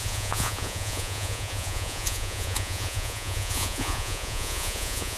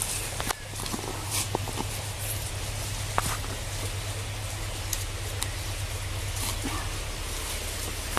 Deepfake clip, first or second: first